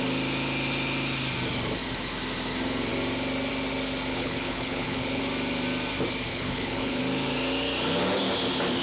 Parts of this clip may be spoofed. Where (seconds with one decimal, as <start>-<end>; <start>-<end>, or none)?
4.1-5.2; 6.3-7.0